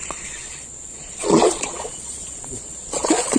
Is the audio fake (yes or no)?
yes